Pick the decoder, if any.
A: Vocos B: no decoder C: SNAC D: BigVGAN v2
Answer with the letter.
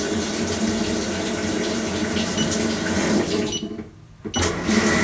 B